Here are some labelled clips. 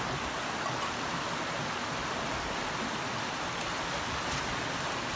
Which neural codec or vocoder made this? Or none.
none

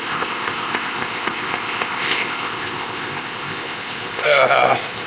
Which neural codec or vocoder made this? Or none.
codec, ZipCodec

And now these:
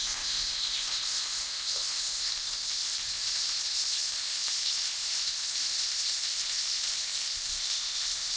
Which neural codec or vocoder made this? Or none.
codec, ZipCodec